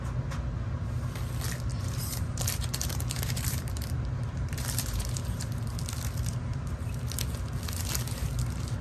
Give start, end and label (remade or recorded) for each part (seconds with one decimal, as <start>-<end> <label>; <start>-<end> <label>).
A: 0.0-1.7 recorded; 1.7-5.8 remade; 5.8-6.4 recorded; 6.4-7.0 remade; 7.0-8.8 recorded